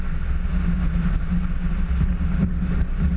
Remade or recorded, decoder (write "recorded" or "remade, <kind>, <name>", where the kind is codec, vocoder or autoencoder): recorded